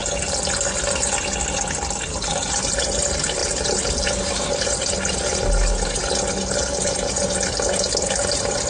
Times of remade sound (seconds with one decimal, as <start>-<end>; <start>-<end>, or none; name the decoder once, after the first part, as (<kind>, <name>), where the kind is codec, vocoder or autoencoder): none